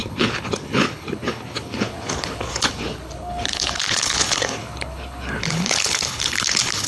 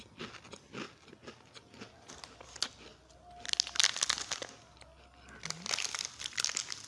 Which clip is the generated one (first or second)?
first